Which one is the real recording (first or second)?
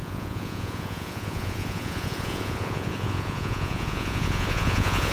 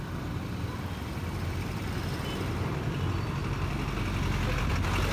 second